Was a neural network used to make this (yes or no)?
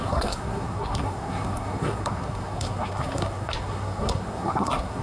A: yes